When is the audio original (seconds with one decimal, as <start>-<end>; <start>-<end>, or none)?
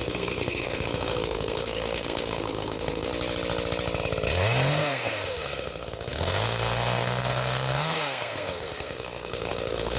3.1-4.7